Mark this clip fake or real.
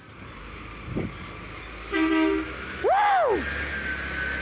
real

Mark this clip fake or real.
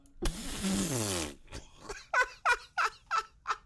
real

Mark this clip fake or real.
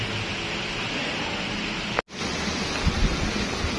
real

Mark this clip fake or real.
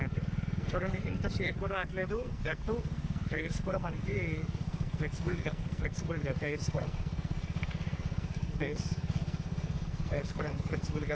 fake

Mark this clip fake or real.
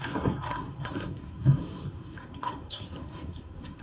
fake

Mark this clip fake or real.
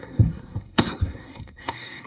fake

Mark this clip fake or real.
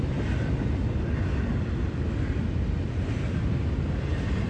real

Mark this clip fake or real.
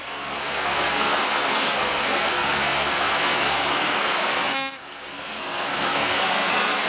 fake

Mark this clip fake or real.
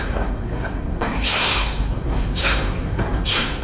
fake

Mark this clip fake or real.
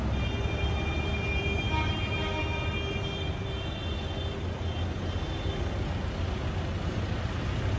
real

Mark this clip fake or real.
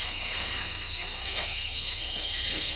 fake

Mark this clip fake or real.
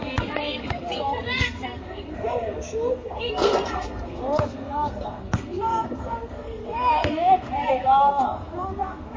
fake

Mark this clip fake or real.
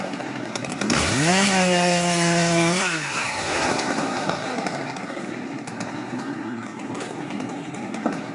fake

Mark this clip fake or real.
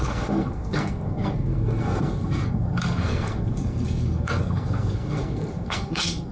fake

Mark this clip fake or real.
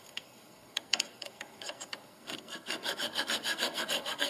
fake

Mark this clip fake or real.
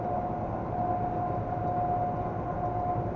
real